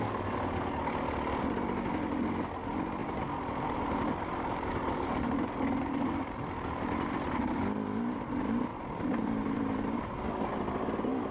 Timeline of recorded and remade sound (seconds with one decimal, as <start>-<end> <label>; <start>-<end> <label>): 0.0-3.0 recorded; 3.0-7.6 remade; 7.6-8.7 recorded; 8.7-10.2 remade; 10.2-11.3 recorded